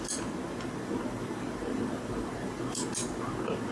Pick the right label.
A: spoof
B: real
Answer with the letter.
B